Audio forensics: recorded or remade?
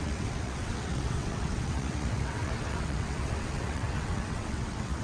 remade